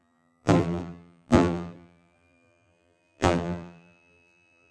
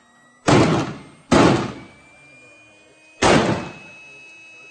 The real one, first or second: second